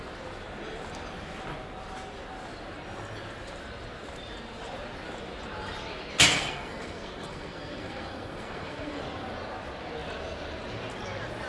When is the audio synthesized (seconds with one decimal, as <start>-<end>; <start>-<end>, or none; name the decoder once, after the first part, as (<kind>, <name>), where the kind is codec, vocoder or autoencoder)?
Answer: 6.3-9.0 (codec, SNAC)